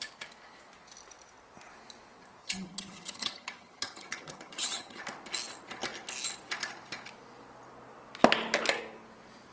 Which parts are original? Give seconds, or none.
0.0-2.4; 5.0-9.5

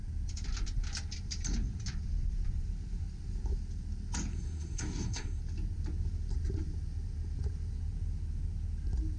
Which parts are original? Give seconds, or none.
0.0-4.3; 5.4-9.2

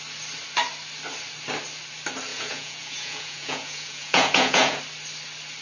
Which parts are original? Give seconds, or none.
0.0-2.3; 4.8-5.6

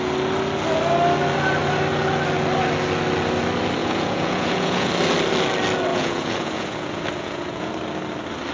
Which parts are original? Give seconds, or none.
0.0-3.8; 4.9-5.9; 7.7-8.5